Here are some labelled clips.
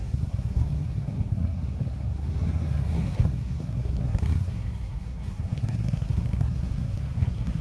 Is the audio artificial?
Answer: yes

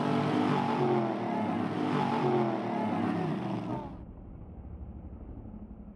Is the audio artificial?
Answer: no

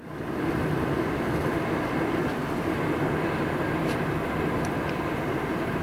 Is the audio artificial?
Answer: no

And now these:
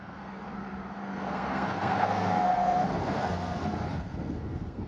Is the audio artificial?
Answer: yes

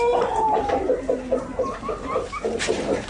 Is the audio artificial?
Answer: no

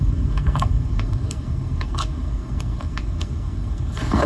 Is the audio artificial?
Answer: yes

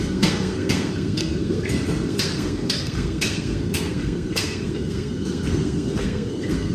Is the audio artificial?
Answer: yes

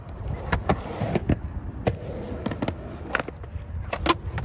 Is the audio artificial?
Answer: no